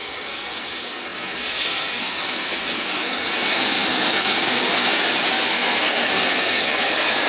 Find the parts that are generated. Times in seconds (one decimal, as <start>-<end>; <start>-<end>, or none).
0.0-7.3